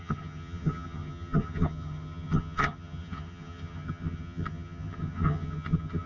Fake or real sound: fake